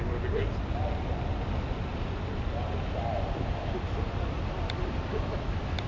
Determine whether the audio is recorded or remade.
recorded